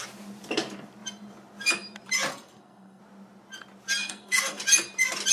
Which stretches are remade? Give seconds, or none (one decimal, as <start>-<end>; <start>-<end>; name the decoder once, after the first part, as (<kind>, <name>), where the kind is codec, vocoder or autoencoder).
2.3-3.0 (codec, SNAC); 4.0-4.6